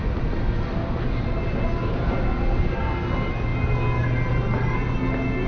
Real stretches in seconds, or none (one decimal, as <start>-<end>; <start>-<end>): 0.0-5.5